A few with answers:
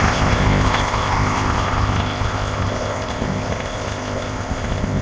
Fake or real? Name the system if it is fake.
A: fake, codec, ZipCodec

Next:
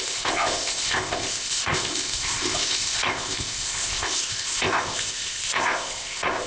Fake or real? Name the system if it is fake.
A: fake, codec, ZipCodec